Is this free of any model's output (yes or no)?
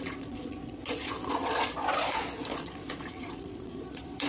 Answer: no